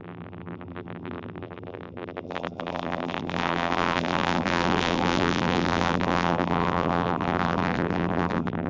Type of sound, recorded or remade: remade